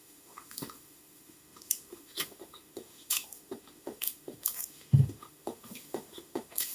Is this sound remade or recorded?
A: remade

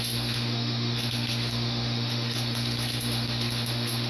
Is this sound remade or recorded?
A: remade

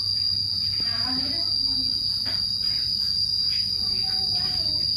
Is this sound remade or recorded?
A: recorded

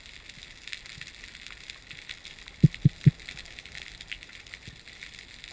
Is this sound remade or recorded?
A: recorded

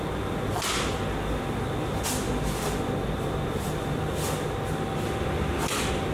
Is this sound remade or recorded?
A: recorded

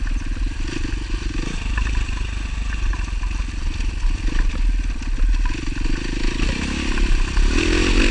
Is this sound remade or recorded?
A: recorded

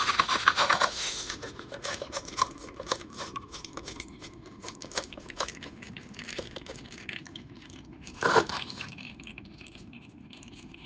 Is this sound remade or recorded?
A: remade